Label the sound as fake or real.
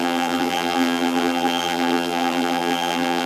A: fake